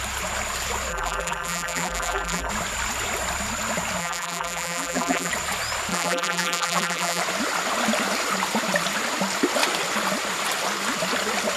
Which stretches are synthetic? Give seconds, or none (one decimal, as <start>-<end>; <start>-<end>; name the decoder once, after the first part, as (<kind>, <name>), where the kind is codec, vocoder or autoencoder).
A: 0.9-2.5 (vocoder, BigVGAN v2); 4.0-5.3; 5.9-7.2